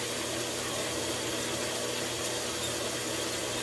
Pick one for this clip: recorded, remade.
recorded